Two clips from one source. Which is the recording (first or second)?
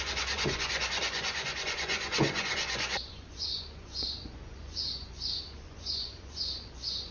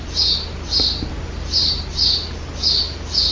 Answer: second